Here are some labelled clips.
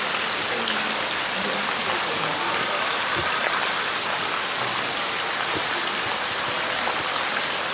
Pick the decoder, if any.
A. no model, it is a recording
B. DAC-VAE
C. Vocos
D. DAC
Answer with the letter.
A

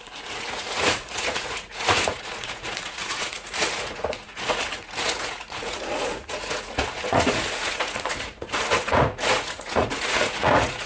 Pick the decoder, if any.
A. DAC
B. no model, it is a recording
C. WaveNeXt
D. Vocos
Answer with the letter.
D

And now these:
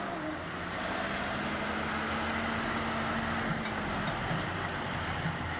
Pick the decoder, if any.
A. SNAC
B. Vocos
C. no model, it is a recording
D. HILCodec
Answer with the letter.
C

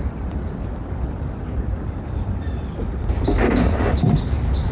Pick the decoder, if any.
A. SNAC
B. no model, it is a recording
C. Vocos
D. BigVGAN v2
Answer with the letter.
B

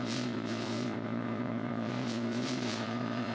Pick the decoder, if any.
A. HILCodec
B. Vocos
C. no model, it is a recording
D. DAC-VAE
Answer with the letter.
B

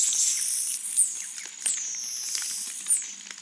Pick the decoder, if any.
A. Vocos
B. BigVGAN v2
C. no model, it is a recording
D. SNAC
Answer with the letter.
C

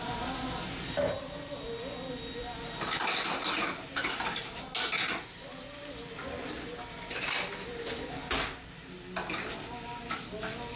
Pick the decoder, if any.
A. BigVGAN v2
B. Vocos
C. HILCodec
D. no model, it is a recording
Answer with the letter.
D